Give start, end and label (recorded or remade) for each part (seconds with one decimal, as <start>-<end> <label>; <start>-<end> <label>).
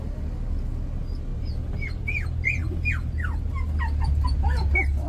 0.0-5.1 recorded